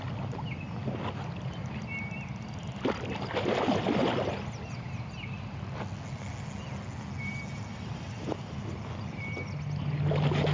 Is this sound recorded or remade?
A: recorded